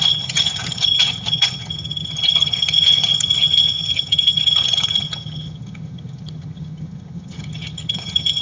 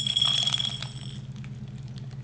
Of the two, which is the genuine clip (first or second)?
second